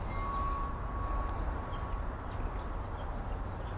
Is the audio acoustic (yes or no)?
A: yes